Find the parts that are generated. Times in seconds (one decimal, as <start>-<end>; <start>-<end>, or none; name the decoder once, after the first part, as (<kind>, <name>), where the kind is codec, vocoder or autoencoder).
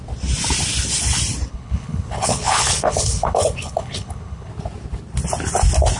1.5-4.5 (codec, HILCodec)